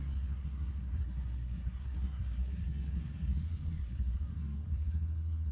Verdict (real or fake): fake